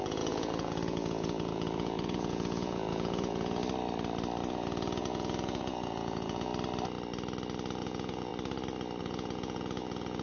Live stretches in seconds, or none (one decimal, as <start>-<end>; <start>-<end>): 3.6-4.5; 6.5-7.8; 8.3-9.0